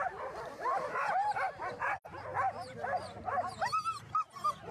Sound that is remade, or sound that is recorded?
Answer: recorded